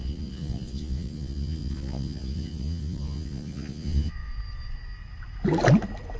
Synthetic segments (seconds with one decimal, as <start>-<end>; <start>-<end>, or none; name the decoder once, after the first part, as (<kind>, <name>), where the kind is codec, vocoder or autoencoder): 0.0-4.3 (vocoder, Vocos)